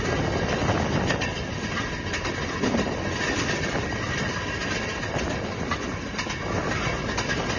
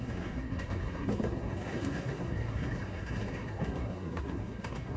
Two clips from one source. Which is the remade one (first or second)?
second